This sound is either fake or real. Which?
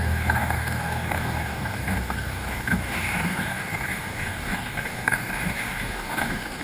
fake